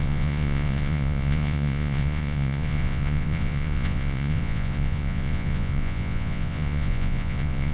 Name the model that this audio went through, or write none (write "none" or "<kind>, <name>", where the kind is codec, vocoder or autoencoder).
vocoder, Vocos